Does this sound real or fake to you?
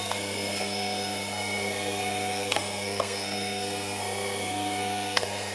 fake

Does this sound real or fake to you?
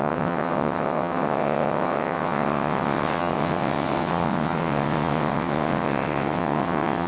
fake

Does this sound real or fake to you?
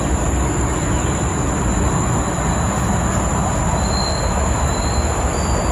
real